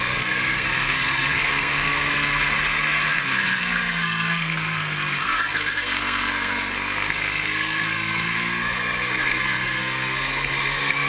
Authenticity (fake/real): fake